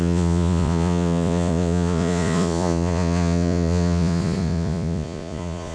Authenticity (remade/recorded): remade